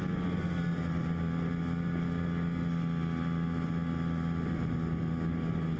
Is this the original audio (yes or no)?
yes